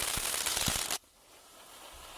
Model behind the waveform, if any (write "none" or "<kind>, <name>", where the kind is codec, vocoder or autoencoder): none